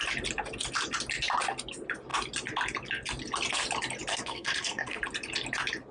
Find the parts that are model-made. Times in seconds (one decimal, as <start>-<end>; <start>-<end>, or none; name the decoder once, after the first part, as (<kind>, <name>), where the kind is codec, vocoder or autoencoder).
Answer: 4.1-5.0 (codec, SNAC)